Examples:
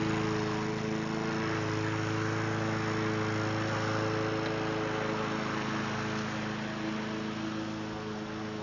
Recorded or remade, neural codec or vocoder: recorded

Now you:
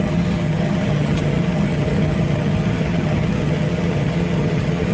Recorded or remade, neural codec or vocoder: remade, vocoder, HiFi-GAN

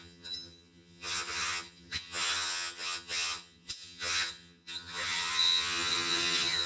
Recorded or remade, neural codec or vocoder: remade, vocoder, HiFi-GAN